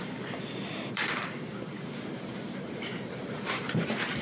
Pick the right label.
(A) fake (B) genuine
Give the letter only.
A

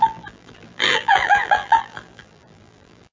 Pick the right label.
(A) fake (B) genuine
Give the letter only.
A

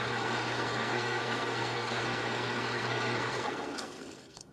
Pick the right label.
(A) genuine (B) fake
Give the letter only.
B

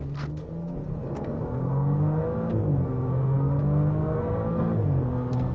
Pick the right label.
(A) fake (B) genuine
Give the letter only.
A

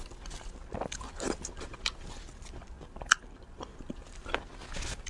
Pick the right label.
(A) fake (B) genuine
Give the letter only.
B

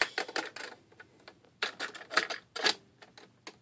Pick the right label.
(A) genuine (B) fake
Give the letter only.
A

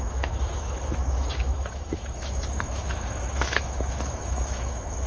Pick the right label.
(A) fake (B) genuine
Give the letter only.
A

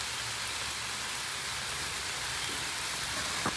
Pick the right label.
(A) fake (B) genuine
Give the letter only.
A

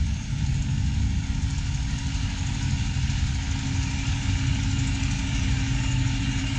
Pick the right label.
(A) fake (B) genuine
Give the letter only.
A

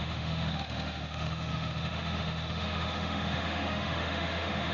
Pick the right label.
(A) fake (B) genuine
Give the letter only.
A